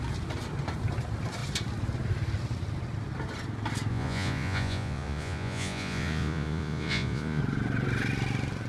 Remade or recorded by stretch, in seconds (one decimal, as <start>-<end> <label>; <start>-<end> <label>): 0.0-3.9 recorded; 3.9-7.4 remade; 7.4-8.7 recorded